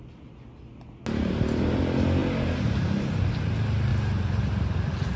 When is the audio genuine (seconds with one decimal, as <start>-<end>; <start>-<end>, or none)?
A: 0.0-1.2; 1.8-3.9; 4.4-5.2